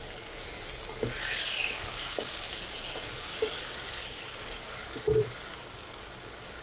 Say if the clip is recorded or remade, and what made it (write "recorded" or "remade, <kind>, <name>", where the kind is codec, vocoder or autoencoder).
remade, codec, DAC